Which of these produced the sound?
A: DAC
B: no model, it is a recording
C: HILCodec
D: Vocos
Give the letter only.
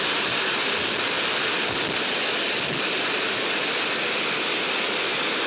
B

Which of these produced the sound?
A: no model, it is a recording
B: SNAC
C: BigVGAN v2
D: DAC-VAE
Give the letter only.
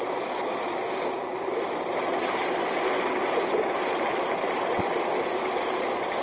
A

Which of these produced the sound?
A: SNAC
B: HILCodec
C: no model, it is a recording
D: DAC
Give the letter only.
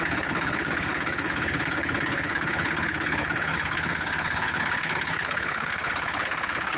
B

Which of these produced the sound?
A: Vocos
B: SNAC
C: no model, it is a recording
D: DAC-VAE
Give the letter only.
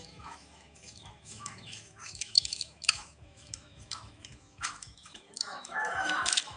D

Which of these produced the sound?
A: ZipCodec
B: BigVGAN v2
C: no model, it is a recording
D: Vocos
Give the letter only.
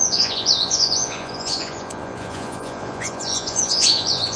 D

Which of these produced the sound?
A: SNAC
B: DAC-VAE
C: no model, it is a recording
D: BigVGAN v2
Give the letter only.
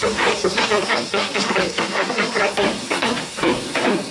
A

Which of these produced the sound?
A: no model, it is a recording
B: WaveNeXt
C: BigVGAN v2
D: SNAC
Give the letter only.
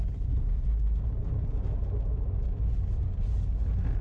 A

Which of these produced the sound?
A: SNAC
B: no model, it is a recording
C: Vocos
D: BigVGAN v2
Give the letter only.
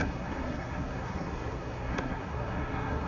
A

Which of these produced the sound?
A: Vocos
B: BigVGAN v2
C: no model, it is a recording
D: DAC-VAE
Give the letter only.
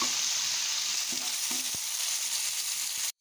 B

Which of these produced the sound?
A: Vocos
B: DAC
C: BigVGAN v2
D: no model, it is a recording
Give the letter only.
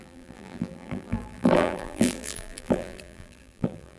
C